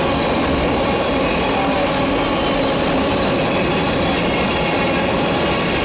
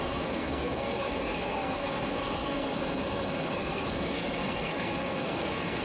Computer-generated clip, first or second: second